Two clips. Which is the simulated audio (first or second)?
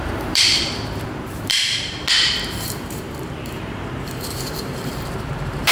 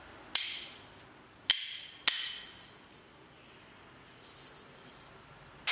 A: first